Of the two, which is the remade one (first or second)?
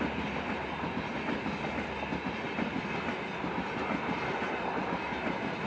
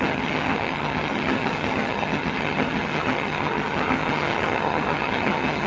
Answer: second